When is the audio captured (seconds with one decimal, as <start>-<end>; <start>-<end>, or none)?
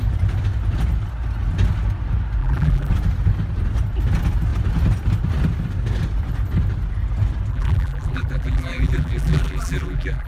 0.0-2.4; 2.9-7.5